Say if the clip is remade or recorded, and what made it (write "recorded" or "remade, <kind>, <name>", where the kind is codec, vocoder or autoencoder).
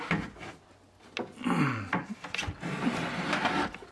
recorded